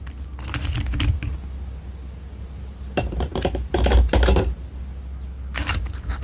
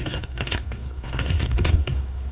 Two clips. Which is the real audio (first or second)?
first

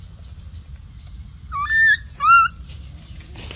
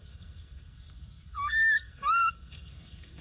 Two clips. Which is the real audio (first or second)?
first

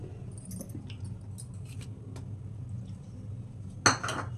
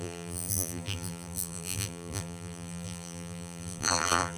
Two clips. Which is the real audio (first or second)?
first